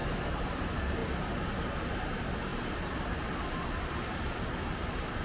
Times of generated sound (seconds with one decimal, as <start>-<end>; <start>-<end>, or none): 0.0-0.6